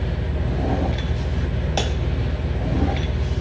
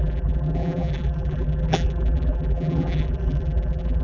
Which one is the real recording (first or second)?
first